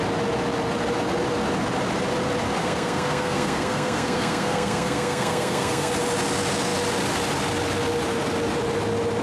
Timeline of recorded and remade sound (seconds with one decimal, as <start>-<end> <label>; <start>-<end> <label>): 0.0-2.6 recorded; 2.6-5.9 remade; 5.9-9.2 recorded